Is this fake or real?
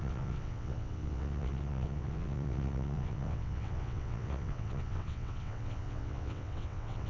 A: fake